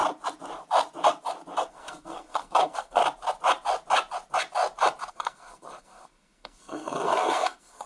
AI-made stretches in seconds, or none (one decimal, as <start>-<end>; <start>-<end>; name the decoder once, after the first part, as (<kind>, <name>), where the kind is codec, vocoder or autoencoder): 1.7-3.0 (codec, SNAC); 5.1-7.9